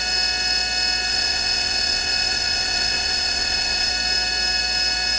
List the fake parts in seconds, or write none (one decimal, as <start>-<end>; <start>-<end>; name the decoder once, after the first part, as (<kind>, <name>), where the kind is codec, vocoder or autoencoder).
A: 1.1-3.9 (vocoder, WaveNeXt)